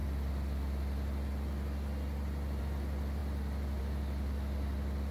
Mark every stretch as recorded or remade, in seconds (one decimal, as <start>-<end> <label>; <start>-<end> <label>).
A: 0.0-5.1 recorded